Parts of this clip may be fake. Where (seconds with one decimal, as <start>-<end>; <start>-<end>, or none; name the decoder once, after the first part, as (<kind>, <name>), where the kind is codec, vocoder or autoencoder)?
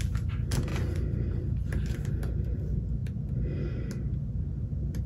none